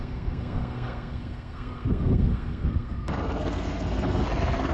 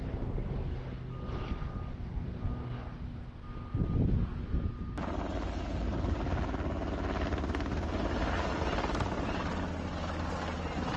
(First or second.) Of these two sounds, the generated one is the first